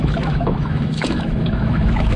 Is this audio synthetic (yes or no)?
yes